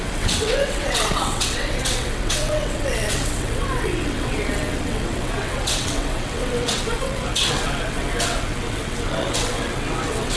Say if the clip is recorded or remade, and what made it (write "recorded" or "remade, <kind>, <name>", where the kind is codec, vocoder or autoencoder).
remade, vocoder, WaveNeXt